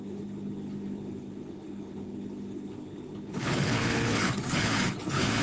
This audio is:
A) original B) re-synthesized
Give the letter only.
B